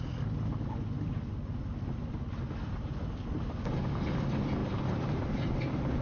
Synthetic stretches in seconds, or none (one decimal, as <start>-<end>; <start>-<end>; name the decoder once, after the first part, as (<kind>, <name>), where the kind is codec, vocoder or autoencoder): 4.6-5.5 (vocoder, BigVGAN v2)